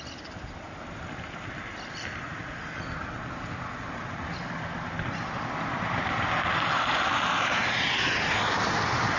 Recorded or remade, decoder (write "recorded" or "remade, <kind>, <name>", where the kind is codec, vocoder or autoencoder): recorded